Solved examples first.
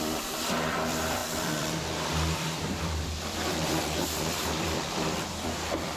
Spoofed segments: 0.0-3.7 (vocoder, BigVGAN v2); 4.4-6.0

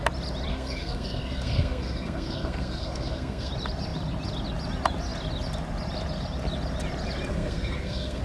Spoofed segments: 0.5-3.5 (codec, SNAC); 7.3-8.2

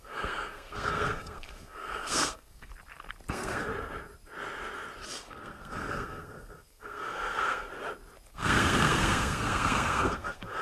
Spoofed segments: 0.0-2.7 (codec, SNAC); 3.3-3.7; 5.1-7.7; 8.3-10.6

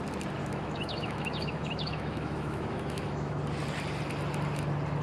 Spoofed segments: 0.4-3.4 (autoencoder, DAC-VAE)

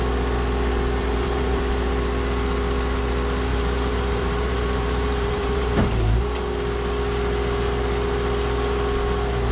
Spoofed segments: 1.0-1.6 (vocoder, BigVGAN v2); 3.5-5.7

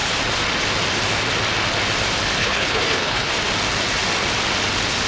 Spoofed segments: 2.4-3.3 (codec, HILCodec)

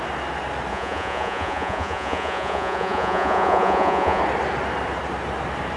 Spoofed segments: 0.7-4.2 (vocoder, Vocos)

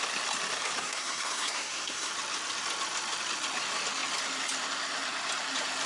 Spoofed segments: 0.8-2.1 (codec, SNAC)